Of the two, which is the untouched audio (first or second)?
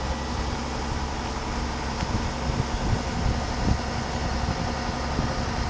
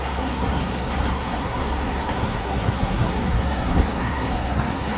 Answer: first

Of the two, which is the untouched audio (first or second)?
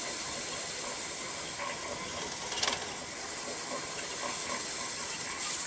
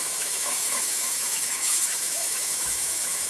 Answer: first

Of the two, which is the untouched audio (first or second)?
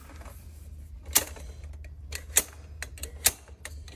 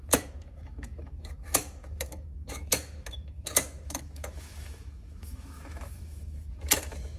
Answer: first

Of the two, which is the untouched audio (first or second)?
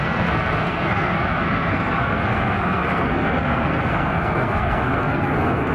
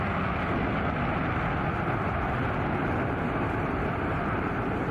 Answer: second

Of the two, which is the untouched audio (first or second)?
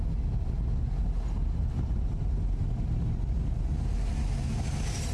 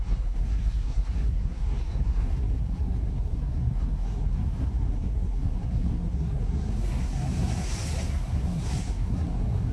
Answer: first